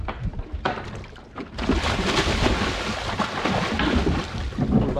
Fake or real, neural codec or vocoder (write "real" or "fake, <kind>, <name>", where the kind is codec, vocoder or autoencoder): real